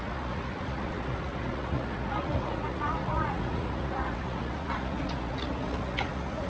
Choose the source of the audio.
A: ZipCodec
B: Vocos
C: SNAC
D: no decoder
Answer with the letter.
B